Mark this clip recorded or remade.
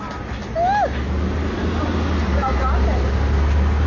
recorded